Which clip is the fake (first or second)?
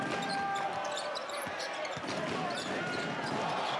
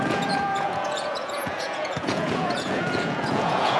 second